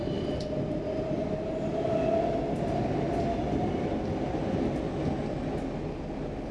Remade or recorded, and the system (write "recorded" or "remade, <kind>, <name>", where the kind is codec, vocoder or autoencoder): recorded